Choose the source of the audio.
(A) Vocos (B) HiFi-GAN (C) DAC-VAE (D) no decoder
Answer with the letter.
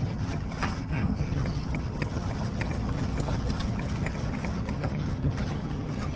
B